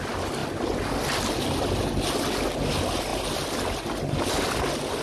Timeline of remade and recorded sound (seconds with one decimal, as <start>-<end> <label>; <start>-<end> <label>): 0.0-5.0 recorded